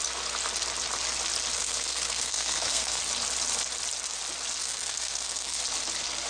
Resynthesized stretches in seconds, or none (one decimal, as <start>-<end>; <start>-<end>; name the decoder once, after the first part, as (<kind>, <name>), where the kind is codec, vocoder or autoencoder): 1.6-3.0 (codec, SNAC); 4.6-5.6